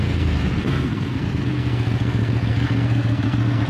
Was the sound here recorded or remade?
remade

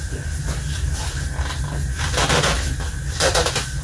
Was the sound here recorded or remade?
recorded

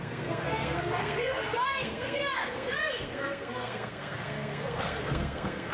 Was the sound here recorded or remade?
remade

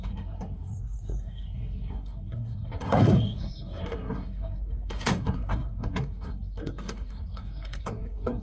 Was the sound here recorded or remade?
remade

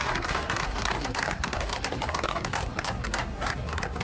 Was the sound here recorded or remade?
remade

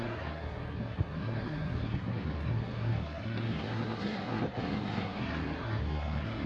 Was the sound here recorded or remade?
remade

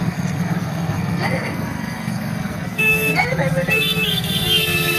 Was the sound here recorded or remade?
remade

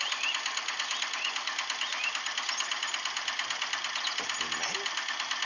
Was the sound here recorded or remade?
recorded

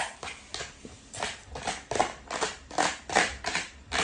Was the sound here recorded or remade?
recorded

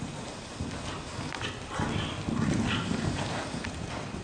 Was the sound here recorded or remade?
recorded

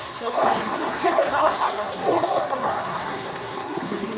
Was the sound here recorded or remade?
remade